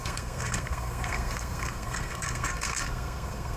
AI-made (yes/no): yes